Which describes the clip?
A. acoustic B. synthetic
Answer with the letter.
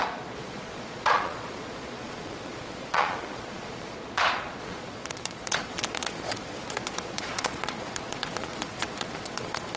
B